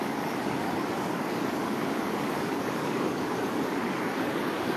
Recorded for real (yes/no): no